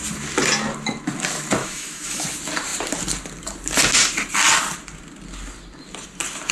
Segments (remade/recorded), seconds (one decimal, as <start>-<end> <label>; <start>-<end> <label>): 0.0-1.6 recorded; 1.6-2.2 remade; 2.2-6.5 recorded